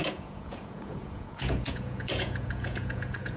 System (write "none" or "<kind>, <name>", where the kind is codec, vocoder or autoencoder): vocoder, Vocos